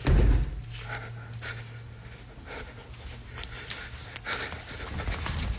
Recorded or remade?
recorded